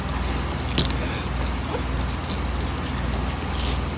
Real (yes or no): yes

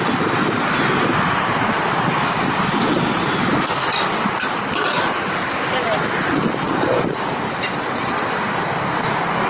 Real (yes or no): yes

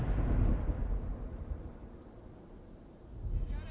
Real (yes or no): yes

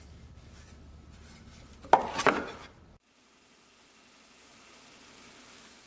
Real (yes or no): yes